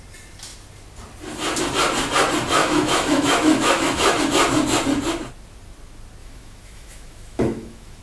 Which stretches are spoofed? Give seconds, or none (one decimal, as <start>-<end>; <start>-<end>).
2.6-4.2; 6.2-8.0